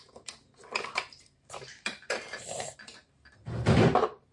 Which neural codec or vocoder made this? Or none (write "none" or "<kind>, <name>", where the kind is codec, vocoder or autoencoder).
vocoder, BigVGAN v2